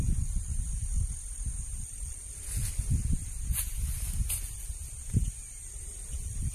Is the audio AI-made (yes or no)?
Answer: no